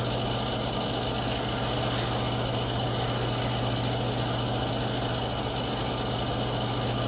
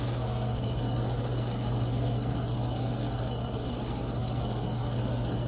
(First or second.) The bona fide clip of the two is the first